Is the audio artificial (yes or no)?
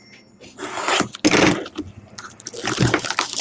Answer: no